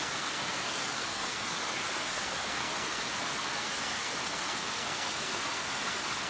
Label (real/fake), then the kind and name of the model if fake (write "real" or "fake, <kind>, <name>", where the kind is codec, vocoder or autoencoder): fake, codec, SNAC